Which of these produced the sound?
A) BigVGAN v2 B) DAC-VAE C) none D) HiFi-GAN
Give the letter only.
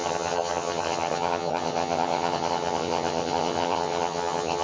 D